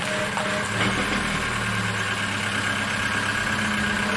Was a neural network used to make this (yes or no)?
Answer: no